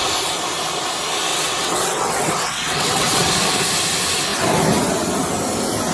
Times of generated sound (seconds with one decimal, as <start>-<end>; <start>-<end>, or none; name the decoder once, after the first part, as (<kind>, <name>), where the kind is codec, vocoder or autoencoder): 1.3-3.3 (vocoder, WaveNeXt)